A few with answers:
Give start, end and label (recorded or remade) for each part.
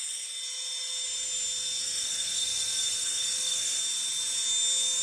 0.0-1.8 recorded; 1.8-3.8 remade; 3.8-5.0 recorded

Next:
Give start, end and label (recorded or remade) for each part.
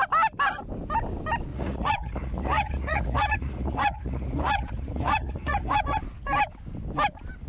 0.0-1.5 recorded; 1.5-6.0 remade; 6.0-7.5 recorded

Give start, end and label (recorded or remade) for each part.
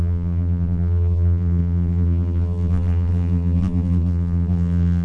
0.0-5.0 remade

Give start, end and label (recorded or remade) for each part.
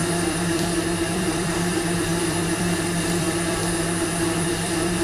0.0-3.6 remade; 3.6-4.2 recorded; 4.2-5.0 remade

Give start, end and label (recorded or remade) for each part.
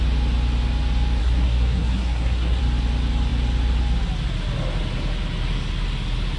0.0-1.2 recorded; 1.2-2.6 remade; 2.6-6.4 recorded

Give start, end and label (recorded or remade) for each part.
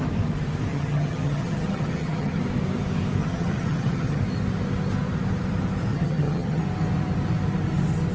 0.0-0.7 recorded; 0.7-2.4 remade; 2.4-3.2 recorded; 3.2-4.2 remade; 4.2-5.9 recorded; 5.9-6.6 remade; 6.6-8.1 recorded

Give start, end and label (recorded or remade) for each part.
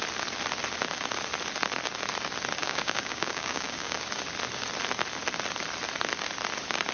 0.0-2.6 recorded; 2.6-4.0 remade; 4.0-6.9 recorded